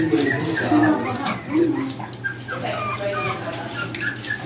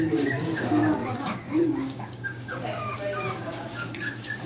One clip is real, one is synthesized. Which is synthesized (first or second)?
second